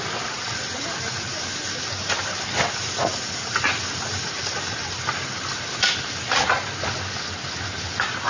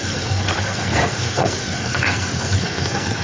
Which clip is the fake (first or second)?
second